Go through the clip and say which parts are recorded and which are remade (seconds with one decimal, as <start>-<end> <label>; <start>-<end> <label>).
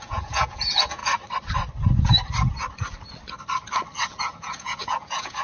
0.0-1.0 remade; 1.0-4.2 recorded; 4.2-5.4 remade